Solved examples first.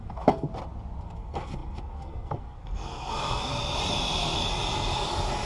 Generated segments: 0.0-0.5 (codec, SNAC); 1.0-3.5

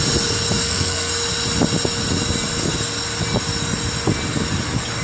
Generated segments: 0.6-1.1 (codec, SNAC)

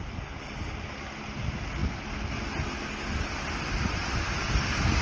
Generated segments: none

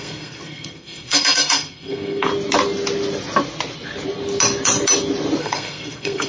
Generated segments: 0.0-2.3 (codec, SNAC); 5.4-6.3